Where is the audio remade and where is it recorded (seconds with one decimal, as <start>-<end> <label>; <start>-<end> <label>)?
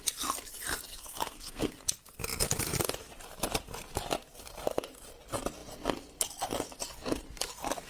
0.0-0.9 recorded; 0.9-1.7 remade; 1.7-7.9 recorded